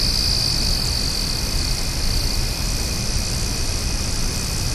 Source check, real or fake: real